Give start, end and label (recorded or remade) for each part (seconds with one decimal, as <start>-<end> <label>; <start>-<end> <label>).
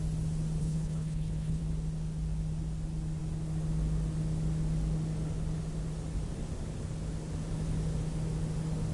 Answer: 0.0-0.6 recorded; 0.6-1.6 remade; 1.6-8.9 recorded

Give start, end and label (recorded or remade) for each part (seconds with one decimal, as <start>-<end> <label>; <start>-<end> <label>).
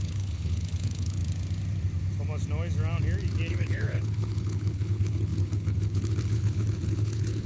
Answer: 0.0-1.2 remade; 1.2-3.5 recorded; 3.5-7.5 remade